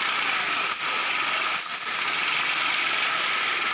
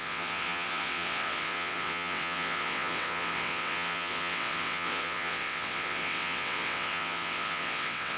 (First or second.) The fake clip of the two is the second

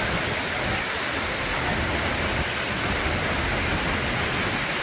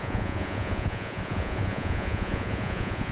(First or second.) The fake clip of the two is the second